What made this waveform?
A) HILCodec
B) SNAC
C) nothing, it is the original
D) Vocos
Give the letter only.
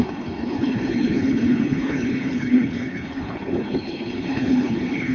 A